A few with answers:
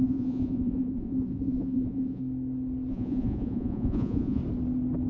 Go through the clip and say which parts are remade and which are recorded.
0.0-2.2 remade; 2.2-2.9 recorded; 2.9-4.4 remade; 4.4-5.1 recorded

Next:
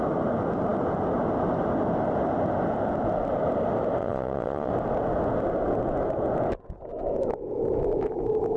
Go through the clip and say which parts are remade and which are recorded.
0.0-4.0 recorded; 4.0-4.7 remade; 4.7-8.6 recorded

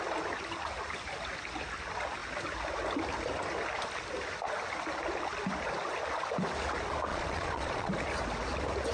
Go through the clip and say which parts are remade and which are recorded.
0.0-7.1 recorded; 7.1-7.9 remade; 7.9-8.9 recorded

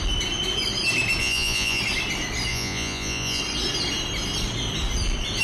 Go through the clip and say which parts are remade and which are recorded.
0.0-1.2 recorded; 1.2-1.8 remade; 1.8-2.5 recorded; 2.5-3.4 remade; 3.4-5.4 recorded

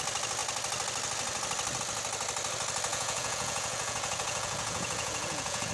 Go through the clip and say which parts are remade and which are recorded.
0.0-2.9 recorded; 2.9-5.7 remade

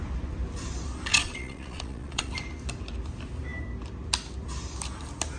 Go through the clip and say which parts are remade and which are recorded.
0.0-1.1 recorded; 1.1-2.3 remade; 2.3-5.4 recorded

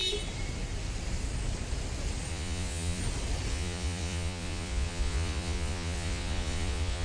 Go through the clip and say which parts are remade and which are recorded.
0.0-2.3 recorded; 2.3-3.0 remade; 3.0-3.5 recorded; 3.5-7.0 remade